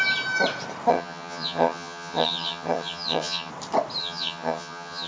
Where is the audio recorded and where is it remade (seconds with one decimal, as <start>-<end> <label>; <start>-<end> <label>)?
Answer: 0.0-0.9 recorded; 0.9-3.5 remade; 3.5-4.0 recorded; 4.0-5.1 remade